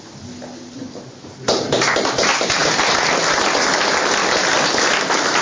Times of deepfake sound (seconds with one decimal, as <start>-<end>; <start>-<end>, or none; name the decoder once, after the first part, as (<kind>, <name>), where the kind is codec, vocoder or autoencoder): none